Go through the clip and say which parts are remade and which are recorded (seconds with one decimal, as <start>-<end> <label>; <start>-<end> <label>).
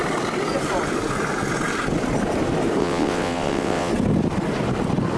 0.0-2.8 recorded; 2.8-3.9 remade; 3.9-5.2 recorded